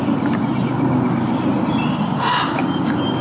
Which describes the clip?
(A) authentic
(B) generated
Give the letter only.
A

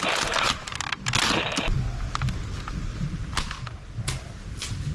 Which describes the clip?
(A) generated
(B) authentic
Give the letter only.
B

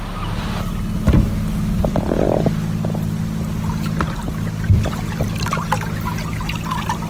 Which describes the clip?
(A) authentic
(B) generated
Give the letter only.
A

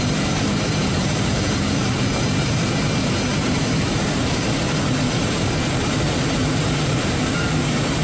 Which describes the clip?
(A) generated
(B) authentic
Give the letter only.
A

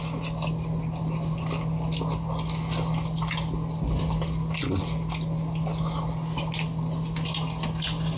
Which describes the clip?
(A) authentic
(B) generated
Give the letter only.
A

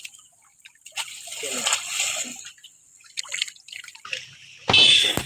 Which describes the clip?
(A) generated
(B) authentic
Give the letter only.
B